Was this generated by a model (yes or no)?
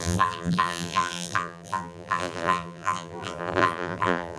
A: yes